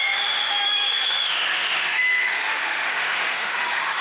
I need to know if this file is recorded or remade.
remade